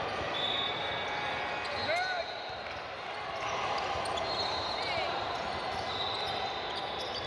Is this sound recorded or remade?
recorded